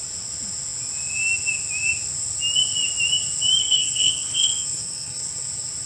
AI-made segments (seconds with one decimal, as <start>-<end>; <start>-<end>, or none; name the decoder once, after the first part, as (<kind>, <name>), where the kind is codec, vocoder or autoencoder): 3.6-5.2 (codec, SNAC)